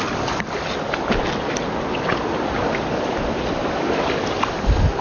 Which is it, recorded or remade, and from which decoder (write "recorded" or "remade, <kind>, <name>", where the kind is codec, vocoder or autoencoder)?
recorded